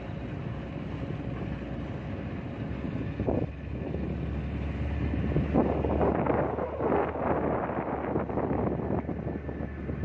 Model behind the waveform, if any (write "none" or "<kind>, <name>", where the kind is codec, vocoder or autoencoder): none